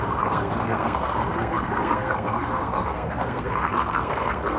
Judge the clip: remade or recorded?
remade